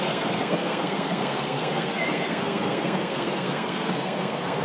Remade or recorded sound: remade